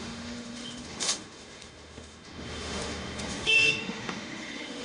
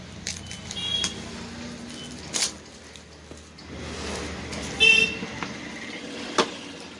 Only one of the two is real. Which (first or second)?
second